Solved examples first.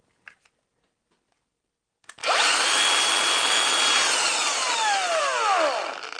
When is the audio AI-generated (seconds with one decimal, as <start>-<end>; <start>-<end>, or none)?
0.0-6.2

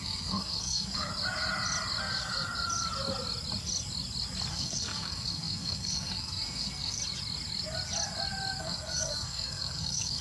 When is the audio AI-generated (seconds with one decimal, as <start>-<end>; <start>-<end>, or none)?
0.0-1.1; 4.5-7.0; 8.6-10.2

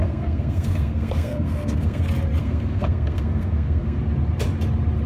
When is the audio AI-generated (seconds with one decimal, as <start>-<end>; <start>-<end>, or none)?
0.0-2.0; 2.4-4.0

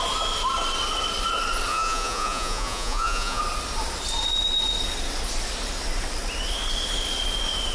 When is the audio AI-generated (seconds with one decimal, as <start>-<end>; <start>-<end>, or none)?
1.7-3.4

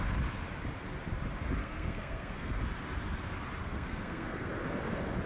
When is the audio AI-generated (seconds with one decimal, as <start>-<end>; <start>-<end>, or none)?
1.6-2.6; 3.6-4.5